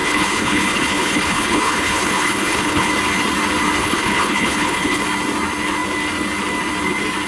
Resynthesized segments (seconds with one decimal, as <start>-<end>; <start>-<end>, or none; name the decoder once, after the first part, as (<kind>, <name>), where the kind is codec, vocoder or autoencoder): 0.0-2.9 (codec, HILCodec); 3.8-5.0